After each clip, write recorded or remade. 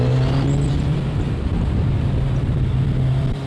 remade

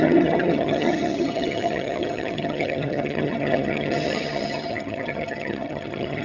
remade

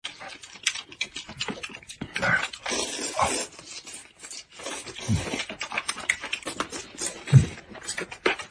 recorded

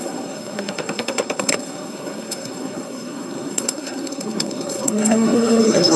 remade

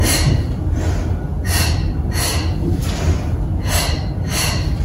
recorded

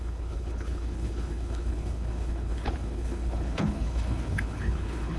remade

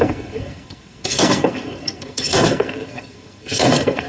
remade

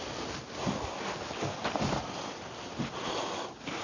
recorded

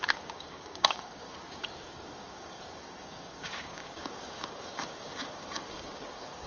remade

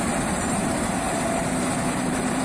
remade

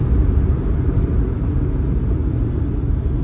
recorded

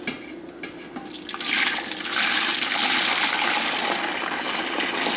recorded